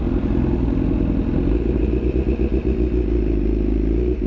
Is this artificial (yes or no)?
no